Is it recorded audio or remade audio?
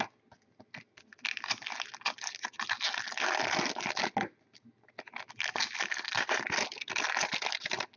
recorded